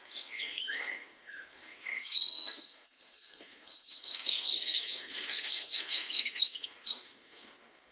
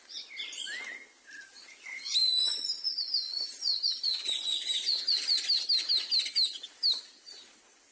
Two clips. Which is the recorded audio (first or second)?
second